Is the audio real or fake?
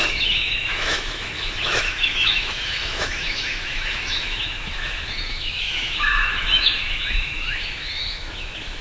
fake